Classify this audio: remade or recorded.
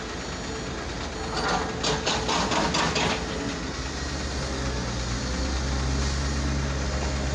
recorded